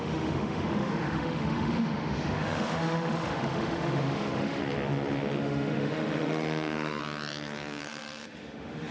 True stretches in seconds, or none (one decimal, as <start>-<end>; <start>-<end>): 4.6-5.4; 7.0-7.8